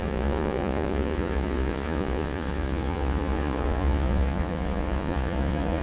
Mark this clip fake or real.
fake